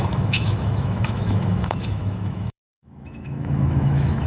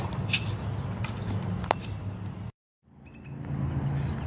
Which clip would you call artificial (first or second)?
first